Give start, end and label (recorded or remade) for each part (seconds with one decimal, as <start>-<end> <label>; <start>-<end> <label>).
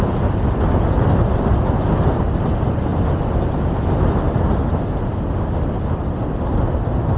0.0-7.2 recorded